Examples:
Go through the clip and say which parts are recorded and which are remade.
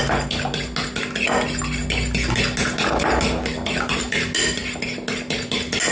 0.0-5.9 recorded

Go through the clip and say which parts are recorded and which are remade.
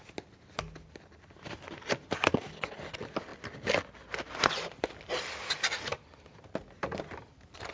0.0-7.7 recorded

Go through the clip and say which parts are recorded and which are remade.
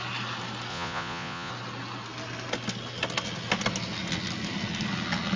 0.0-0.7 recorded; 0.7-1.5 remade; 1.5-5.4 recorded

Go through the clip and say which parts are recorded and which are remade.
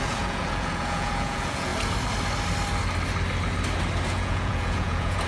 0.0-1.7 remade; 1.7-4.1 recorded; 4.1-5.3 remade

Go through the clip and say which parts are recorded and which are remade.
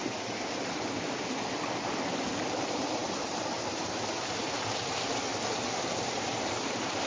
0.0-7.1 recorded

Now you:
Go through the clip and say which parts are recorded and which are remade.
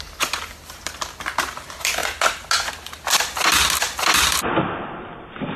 0.0-5.6 recorded